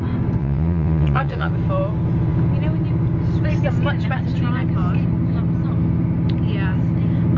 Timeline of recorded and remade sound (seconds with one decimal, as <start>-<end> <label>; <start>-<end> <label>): 0.0-0.4 recorded; 0.4-1.5 remade; 1.5-7.4 recorded